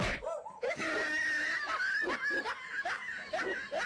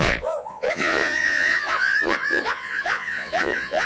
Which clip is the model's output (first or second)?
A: second